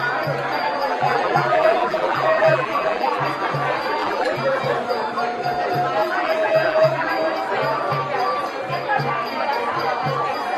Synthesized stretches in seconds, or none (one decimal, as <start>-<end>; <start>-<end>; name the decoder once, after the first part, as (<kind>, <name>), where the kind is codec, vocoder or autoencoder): 0.8-3.2 (vocoder, BigVGAN v2); 4.0-4.6; 6.0-7.1